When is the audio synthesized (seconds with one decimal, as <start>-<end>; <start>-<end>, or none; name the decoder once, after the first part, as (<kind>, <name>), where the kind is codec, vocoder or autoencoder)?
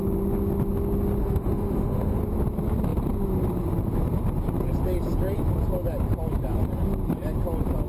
1.2-2.2 (autoencoder, DAC-VAE)